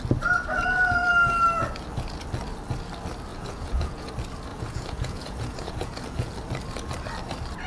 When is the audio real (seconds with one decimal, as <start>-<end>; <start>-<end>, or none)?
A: 0.0-3.3; 4.1-4.5; 6.3-7.7

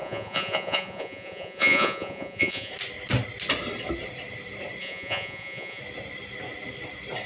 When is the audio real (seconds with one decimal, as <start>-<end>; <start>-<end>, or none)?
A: 2.7-4.8; 5.8-7.3

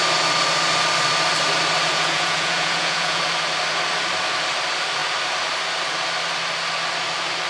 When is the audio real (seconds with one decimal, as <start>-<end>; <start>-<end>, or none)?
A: 0.0-1.9; 3.2-7.5